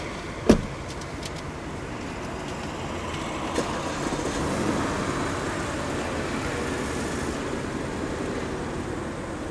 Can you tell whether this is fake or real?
real